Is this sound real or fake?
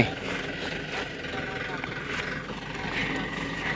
real